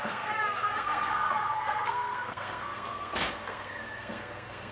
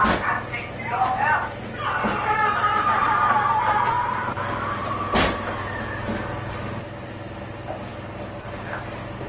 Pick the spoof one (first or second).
first